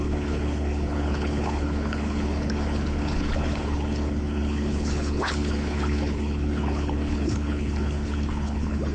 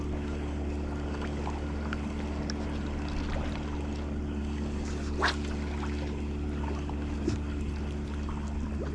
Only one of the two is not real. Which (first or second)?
first